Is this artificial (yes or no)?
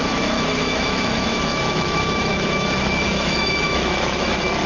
yes